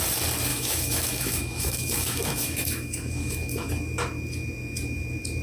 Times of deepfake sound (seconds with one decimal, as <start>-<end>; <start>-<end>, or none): 0.5-3.7